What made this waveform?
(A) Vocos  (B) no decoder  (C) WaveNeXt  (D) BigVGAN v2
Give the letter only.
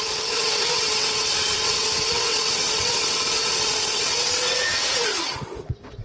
C